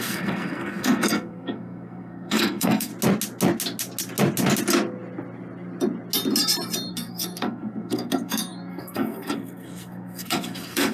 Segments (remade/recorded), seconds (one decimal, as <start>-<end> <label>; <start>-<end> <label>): 0.0-2.9 remade; 2.9-6.9 recorded; 6.9-10.9 remade